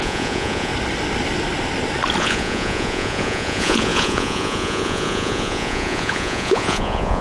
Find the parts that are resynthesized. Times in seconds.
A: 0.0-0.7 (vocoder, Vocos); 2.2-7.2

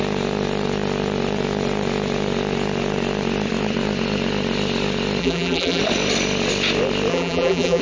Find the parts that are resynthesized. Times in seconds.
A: 5.2-5.8 (vocoder, BigVGAN v2); 7.1-7.8

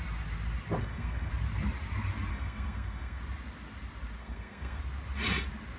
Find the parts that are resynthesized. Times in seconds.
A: 0.8-1.3 (codec, SNAC); 2.3-3.2; 4.2-4.8

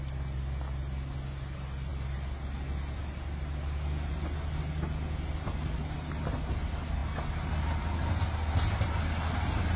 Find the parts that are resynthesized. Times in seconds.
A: none

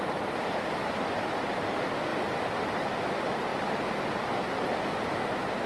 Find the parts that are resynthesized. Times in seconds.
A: none